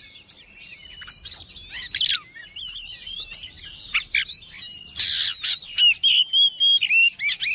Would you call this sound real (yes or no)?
yes